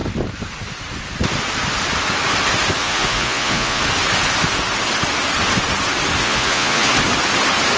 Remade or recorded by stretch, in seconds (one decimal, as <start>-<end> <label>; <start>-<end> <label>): 0.0-2.8 recorded; 2.8-3.8 remade; 3.8-6.2 recorded; 6.2-6.9 remade; 6.9-7.8 recorded

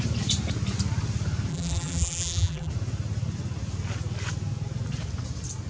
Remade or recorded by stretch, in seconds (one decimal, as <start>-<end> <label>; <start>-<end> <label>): 0.0-1.5 recorded; 1.5-2.7 remade; 2.7-5.7 recorded

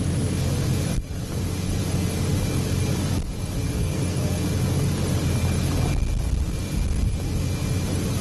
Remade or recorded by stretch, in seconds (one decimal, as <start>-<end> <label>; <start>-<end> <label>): 0.0-3.8 recorded; 3.8-4.3 remade; 4.3-8.2 recorded

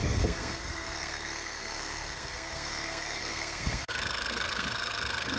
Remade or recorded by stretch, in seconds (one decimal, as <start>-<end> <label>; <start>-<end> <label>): 0.0-5.4 remade